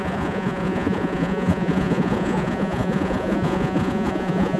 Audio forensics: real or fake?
fake